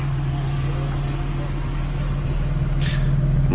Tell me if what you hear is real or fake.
real